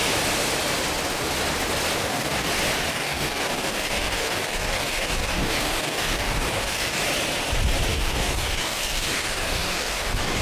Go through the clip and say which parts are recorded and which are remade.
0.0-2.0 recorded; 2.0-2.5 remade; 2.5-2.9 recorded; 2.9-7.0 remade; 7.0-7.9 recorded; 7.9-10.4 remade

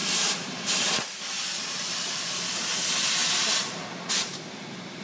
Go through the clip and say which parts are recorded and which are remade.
0.0-0.9 remade; 0.9-5.0 recorded

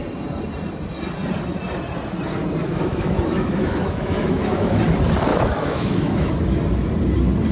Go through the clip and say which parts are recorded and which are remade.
0.0-2.6 recorded; 2.6-4.8 remade; 4.8-5.3 recorded; 5.3-6.3 remade; 6.3-7.5 recorded

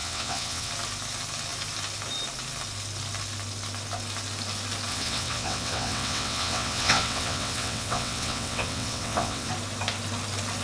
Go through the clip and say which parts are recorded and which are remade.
0.0-0.7 remade; 0.7-4.9 recorded; 4.9-9.5 remade; 9.5-10.6 recorded

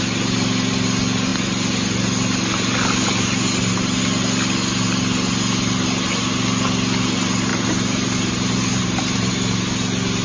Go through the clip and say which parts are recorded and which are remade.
0.0-7.5 recorded; 7.5-9.3 remade; 9.3-10.2 recorded

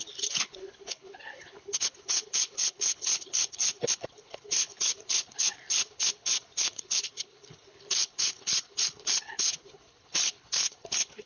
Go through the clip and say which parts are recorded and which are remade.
0.0-11.3 remade